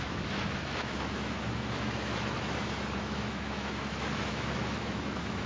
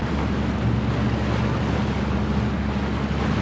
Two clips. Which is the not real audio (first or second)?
first